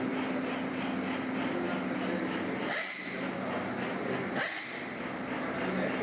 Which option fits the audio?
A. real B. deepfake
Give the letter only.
A